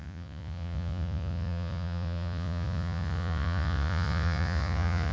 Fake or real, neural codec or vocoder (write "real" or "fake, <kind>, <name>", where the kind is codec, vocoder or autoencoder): fake, vocoder, Vocos